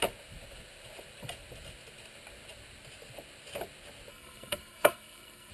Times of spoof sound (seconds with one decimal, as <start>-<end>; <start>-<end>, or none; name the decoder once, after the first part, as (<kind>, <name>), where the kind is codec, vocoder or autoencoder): 4.1-5.5 (codec, SNAC)